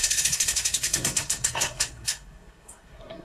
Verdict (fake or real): fake